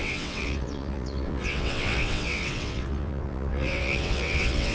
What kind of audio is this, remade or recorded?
remade